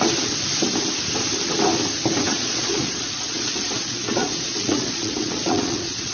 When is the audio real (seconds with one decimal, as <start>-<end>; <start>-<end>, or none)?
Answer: 0.0-2.3